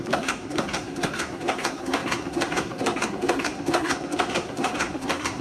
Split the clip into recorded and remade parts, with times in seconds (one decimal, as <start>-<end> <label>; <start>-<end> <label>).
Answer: 0.0-5.4 remade